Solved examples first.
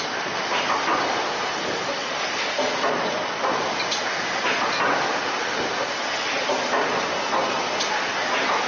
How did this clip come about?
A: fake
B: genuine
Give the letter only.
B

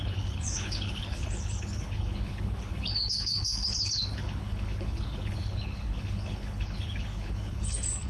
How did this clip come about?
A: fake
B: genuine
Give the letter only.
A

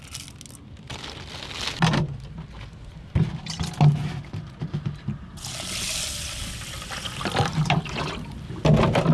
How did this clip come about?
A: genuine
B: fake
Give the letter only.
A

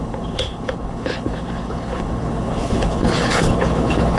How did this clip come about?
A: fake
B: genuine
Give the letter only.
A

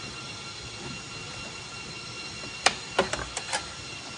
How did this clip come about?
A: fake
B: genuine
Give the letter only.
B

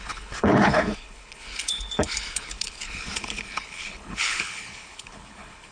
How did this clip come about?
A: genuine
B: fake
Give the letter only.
B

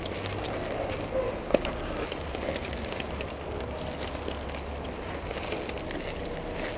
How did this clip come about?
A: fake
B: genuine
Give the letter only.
B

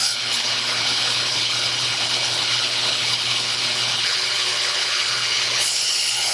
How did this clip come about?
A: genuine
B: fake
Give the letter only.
B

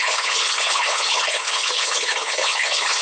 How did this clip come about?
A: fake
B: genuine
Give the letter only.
A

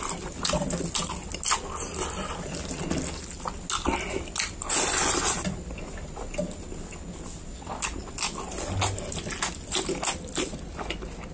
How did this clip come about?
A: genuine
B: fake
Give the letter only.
A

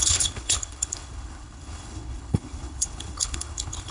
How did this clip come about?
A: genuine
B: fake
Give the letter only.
B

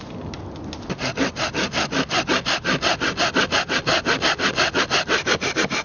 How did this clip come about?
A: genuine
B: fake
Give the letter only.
A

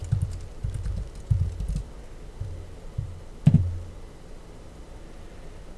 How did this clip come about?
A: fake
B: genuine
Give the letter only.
B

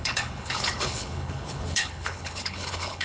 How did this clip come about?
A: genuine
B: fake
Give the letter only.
B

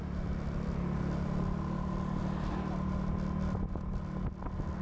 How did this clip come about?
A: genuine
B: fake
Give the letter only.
A